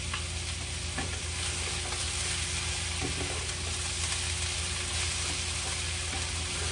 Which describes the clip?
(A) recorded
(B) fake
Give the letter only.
A